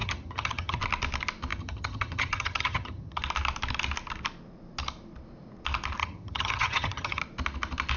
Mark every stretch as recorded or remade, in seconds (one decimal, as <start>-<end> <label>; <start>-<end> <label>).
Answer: 0.0-0.8 remade; 0.8-1.5 recorded; 1.5-3.2 remade; 3.2-6.0 recorded; 6.0-7.2 remade; 7.2-8.0 recorded